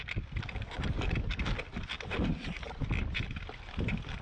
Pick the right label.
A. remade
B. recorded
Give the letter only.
B